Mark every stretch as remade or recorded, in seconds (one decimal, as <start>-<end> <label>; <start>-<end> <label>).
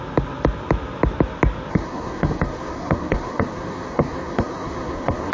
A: 0.0-1.7 recorded; 1.7-5.3 remade